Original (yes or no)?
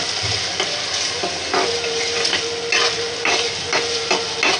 yes